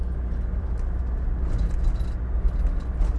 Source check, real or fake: real